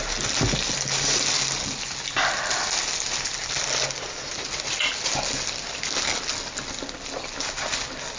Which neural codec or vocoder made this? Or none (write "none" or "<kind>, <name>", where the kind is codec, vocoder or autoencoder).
none